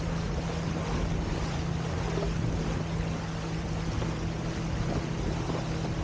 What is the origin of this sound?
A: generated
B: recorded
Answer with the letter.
B